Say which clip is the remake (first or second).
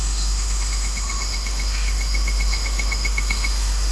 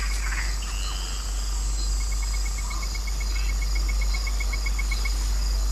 first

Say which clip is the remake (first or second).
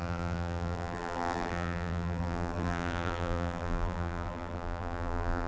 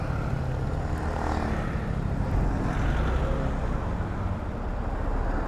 first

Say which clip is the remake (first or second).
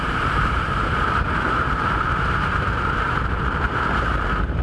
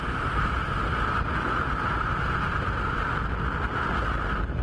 first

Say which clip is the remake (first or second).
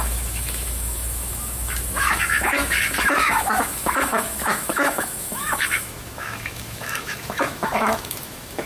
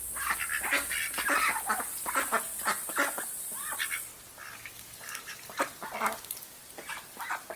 first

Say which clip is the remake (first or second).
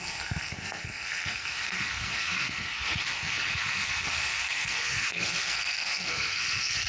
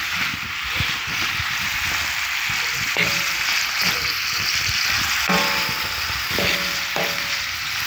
first